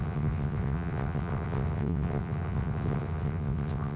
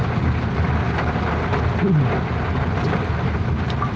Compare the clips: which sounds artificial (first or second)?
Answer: first